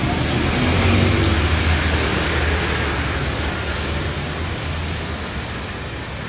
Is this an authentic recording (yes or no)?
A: yes